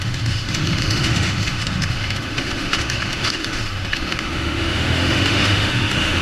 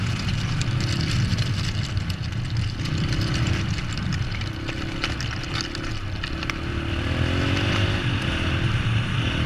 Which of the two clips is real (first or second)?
second